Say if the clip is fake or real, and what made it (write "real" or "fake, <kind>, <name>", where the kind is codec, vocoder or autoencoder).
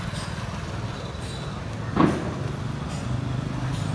real